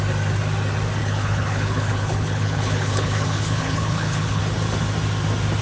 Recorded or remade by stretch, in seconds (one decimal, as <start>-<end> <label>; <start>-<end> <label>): 0.0-1.0 recorded; 1.0-4.4 remade; 4.4-5.6 recorded